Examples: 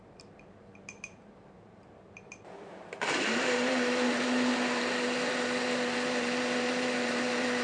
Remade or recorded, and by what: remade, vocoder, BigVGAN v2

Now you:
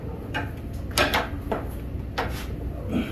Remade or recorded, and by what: recorded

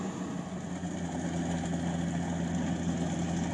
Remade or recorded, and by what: recorded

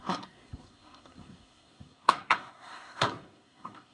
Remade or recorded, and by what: remade, codec, SNAC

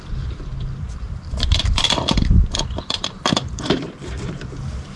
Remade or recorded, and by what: remade, vocoder, BigVGAN v2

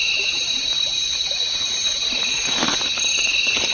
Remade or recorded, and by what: remade, vocoder, BigVGAN v2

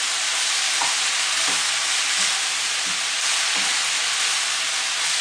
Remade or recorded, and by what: recorded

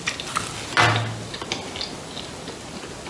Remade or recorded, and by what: recorded